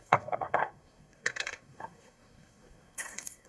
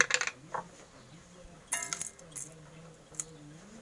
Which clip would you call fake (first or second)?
first